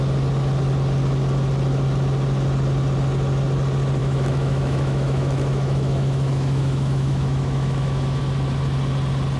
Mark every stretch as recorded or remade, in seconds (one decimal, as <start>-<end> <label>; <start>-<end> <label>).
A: 0.0-4.0 recorded; 4.0-8.2 remade; 8.2-9.4 recorded